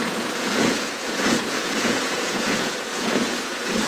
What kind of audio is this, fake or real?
fake